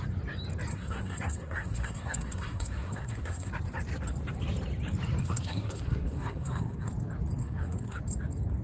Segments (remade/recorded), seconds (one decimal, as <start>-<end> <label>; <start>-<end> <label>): 0.0-0.7 recorded; 0.7-3.5 remade; 3.5-5.2 recorded; 5.2-6.9 remade; 6.9-7.4 recorded; 7.4-8.0 remade; 8.0-8.6 recorded